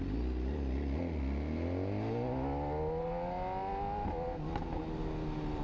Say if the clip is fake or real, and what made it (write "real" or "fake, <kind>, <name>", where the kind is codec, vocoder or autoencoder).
real